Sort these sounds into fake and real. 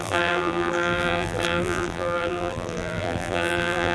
fake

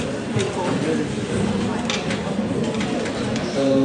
real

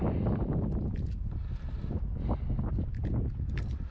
real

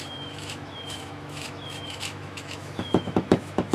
fake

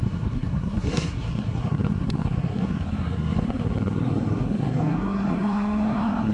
fake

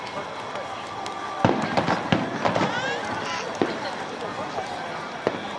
real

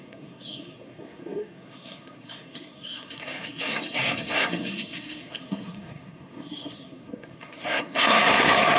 fake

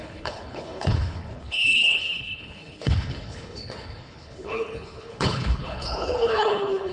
fake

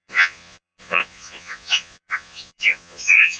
fake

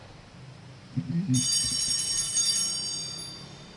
real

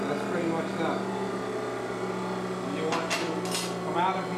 real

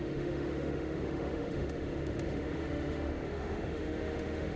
fake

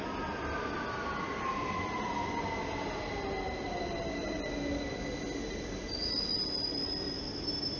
real